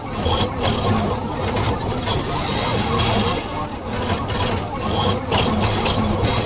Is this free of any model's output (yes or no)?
yes